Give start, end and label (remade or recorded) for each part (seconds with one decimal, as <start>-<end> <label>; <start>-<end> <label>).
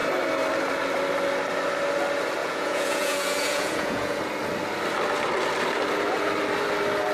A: 0.0-2.4 recorded; 2.4-4.2 remade; 4.2-7.1 recorded